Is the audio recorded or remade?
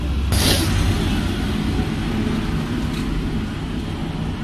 recorded